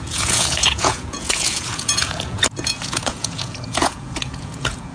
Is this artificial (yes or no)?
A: yes